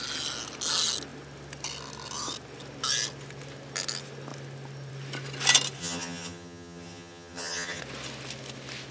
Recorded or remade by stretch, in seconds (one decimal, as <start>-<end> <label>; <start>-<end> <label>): 0.0-5.8 recorded; 5.8-7.8 remade; 7.8-8.9 recorded